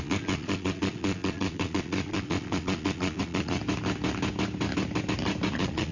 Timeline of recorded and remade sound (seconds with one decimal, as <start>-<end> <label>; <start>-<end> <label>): 0.0-3.6 remade; 3.6-5.5 recorded; 5.5-5.9 remade